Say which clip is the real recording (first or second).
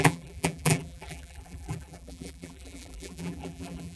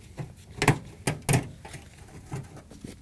second